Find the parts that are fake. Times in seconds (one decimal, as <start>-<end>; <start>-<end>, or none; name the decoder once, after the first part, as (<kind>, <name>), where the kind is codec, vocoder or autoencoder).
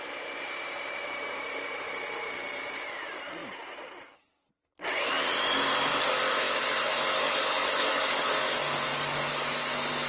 0.0-3.4 (vocoder, BigVGAN v2); 7.9-8.9